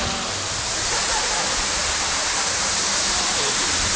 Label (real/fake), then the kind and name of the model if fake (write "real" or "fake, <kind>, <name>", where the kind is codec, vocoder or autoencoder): fake, vocoder, BigVGAN v2